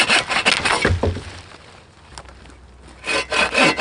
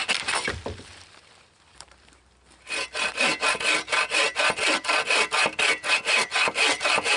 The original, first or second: first